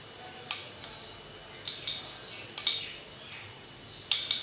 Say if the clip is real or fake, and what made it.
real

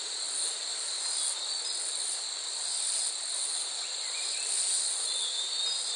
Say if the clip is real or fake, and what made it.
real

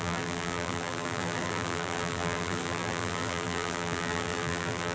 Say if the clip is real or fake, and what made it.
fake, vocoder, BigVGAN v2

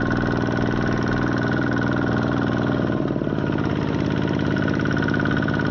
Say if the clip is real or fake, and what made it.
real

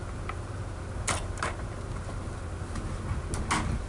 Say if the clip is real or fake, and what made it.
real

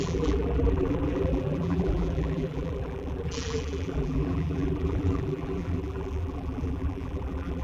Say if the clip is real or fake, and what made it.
fake, vocoder, BigVGAN v2